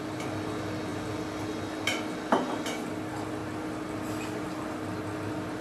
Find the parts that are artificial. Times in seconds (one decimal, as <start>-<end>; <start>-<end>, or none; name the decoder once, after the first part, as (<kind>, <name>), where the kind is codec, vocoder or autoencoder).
none